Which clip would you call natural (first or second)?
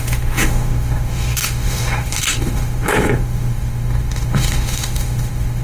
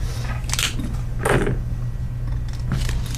second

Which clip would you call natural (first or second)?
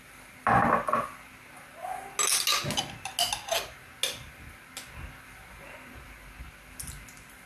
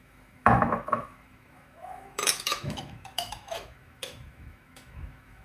first